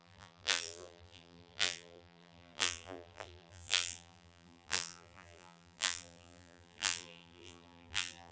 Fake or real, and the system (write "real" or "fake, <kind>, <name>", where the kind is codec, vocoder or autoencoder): fake, vocoder, BigVGAN v2